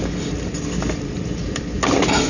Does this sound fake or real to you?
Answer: real